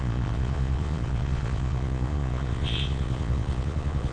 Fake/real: fake